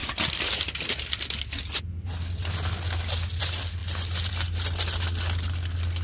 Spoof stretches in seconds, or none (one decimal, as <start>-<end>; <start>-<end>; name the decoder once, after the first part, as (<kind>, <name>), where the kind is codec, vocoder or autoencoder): none